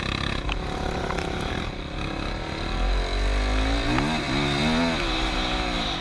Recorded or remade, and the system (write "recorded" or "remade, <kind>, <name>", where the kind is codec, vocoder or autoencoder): recorded